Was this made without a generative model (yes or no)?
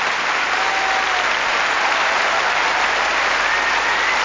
yes